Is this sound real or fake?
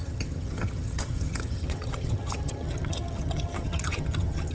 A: fake